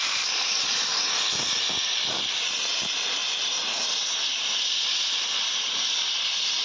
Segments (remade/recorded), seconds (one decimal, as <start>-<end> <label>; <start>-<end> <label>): 0.0-0.9 remade; 0.9-1.9 recorded; 1.9-6.6 remade